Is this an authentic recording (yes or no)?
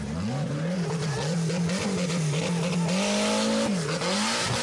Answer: yes